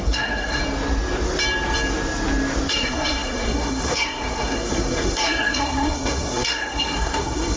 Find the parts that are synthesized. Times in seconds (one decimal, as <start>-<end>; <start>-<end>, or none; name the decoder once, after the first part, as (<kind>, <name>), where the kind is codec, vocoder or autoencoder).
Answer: 0.0-0.6 (codec, SNAC); 2.7-7.6